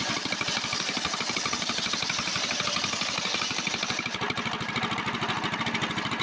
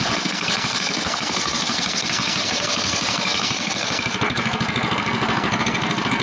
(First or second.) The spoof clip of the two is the second